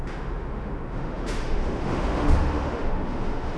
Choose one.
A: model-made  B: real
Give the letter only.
A